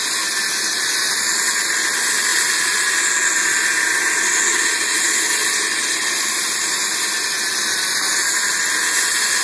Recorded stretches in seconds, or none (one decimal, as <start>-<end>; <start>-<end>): 0.0-9.4